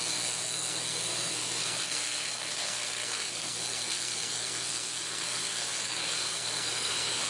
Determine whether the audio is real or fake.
fake